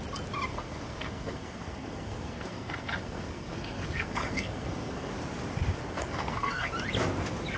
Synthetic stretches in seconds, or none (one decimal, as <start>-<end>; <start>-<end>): 0.5-5.1; 5.8-6.7